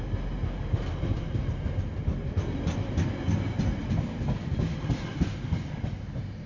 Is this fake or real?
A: real